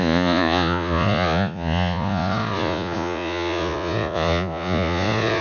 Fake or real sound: fake